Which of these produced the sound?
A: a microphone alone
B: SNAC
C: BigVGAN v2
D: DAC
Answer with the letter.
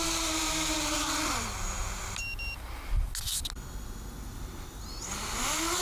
A